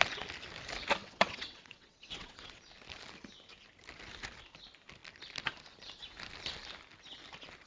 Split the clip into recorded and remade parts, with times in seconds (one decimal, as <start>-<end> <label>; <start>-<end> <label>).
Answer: 0.0-1.0 recorded; 1.0-2.6 remade; 2.6-7.7 recorded